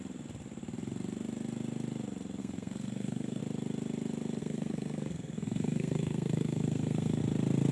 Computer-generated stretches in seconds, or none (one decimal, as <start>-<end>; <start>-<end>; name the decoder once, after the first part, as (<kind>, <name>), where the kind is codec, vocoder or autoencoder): 2.4-3.4 (codec, SNAC); 4.4-7.2